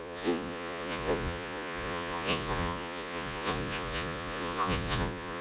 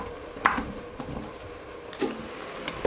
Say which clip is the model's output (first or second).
first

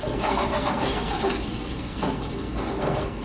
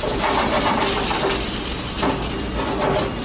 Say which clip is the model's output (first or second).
first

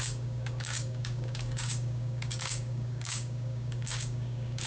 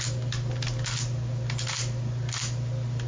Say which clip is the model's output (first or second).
first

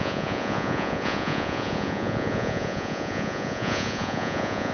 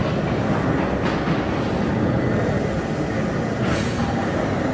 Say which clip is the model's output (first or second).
first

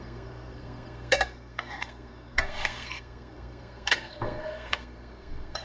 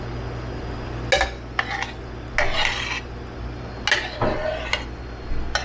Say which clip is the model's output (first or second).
first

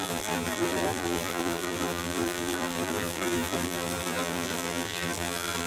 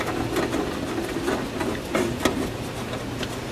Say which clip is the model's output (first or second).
first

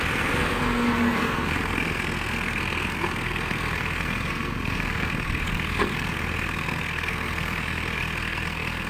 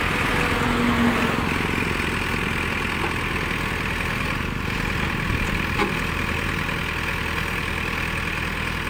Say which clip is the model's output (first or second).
first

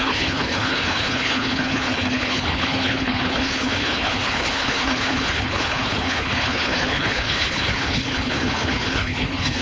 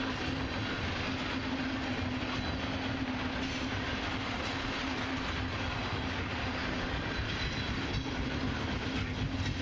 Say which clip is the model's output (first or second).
first